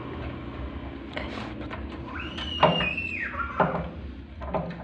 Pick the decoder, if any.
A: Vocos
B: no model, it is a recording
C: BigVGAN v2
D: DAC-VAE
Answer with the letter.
B